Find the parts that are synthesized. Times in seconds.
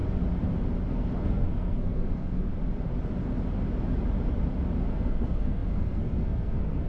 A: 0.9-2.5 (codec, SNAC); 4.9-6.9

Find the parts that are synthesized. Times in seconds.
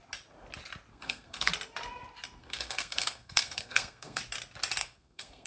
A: 0.9-1.5 (codec, SNAC); 2.4-4.2; 4.8-5.5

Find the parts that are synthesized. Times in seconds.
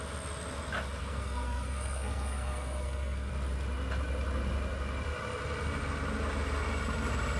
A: 1.0-3.3 (codec, SNAC)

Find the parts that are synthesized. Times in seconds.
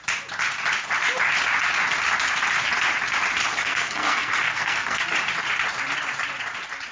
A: 3.6-5.0 (codec, SNAC)